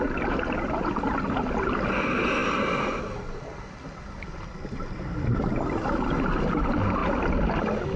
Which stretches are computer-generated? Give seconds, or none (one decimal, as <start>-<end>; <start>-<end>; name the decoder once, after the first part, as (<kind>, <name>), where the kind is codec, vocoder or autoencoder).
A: none